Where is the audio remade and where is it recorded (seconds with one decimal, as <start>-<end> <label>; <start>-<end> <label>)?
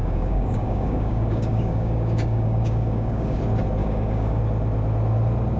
0.0-3.4 remade; 3.4-3.8 recorded; 3.8-4.4 remade; 4.4-5.6 recorded